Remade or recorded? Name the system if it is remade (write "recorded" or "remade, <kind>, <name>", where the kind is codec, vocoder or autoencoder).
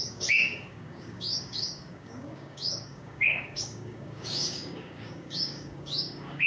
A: remade, codec, DAC